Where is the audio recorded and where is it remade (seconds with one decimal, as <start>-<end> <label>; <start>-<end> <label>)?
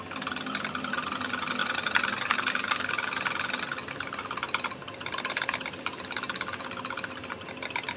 0.0-1.6 recorded; 1.6-2.7 remade; 2.7-8.0 recorded